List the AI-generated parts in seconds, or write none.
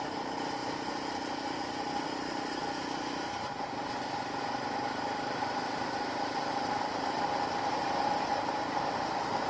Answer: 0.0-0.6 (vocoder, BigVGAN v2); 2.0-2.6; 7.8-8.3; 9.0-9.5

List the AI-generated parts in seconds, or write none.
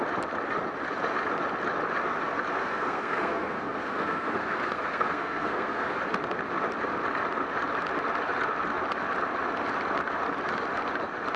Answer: 2.6-6.0 (codec, SNAC)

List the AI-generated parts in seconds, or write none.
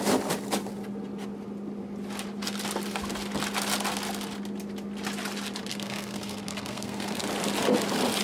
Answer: 5.7-7.2 (codec, SNAC)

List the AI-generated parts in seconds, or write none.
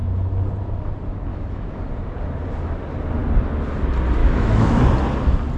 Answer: 1.3-1.8 (autoencoder, DAC-VAE); 4.2-4.8